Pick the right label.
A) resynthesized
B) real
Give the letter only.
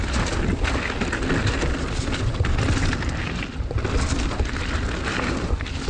B